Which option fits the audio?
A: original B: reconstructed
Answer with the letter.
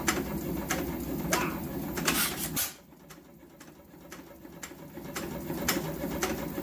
A